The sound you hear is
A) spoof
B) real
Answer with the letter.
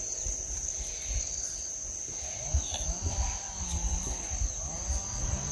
B